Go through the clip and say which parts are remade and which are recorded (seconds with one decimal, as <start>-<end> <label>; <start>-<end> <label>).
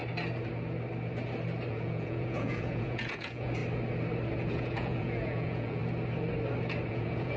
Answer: 0.0-1.7 recorded; 1.7-3.6 remade; 3.6-4.4 recorded; 4.4-5.8 remade; 5.8-6.9 recorded; 6.9-7.4 remade